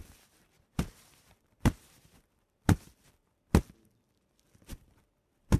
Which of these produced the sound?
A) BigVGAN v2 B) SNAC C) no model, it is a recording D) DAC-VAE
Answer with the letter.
C